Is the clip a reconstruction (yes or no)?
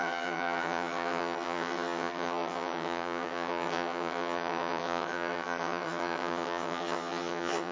yes